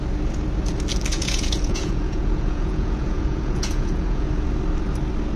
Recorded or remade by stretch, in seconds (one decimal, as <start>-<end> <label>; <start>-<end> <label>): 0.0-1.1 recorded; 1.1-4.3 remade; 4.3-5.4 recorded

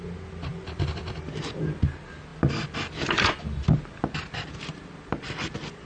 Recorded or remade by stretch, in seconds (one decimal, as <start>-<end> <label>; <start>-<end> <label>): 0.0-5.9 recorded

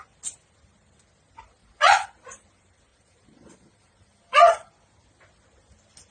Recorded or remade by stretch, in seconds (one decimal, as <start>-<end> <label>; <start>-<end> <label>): 0.0-1.6 recorded; 1.6-2.1 remade; 2.1-2.9 recorded; 2.9-4.7 remade; 4.7-6.1 recorded